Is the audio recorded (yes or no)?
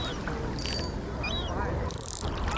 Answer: yes